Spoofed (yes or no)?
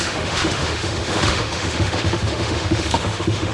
yes